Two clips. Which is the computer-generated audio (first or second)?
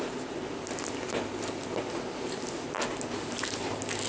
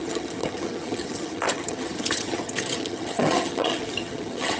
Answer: second